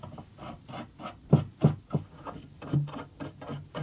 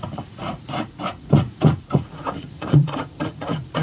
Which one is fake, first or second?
second